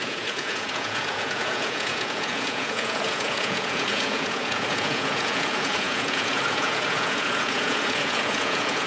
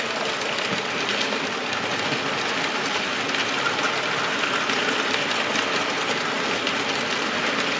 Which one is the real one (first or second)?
second